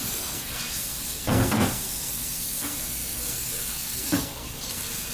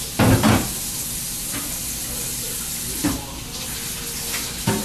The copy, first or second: first